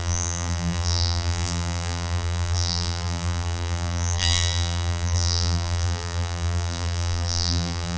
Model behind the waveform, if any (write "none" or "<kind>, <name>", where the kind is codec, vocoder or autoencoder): vocoder, BigVGAN v2